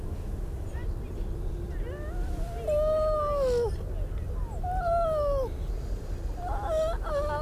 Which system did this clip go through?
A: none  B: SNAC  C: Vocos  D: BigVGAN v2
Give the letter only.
A